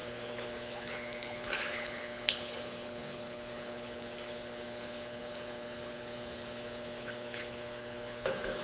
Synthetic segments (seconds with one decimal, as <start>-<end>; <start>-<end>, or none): 0.0-8.6